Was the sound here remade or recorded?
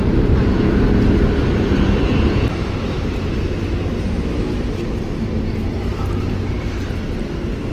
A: remade